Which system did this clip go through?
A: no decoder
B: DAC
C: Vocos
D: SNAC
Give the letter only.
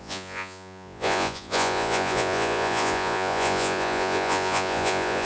C